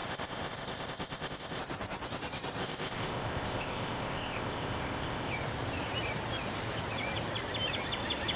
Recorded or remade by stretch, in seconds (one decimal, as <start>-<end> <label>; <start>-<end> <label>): 0.0-1.6 remade; 1.6-2.6 recorded; 2.6-5.3 remade; 5.3-8.4 recorded